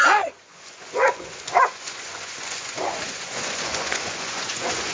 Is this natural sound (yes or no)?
no